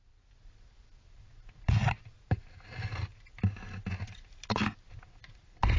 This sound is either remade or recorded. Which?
recorded